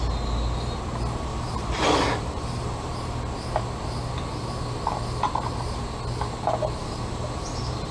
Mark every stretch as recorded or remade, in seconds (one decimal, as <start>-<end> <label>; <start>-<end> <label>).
0.0-1.3 recorded; 1.3-2.9 remade; 2.9-6.8 recorded; 6.8-7.9 remade